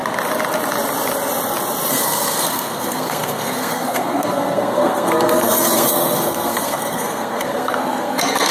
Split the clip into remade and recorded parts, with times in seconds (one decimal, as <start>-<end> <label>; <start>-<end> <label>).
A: 0.0-1.9 recorded; 1.9-8.5 remade